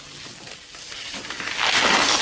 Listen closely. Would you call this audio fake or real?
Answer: real